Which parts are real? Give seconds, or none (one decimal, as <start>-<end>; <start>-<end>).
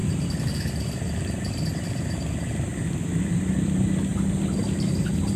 2.0-5.4